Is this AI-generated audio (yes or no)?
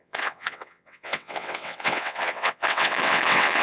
yes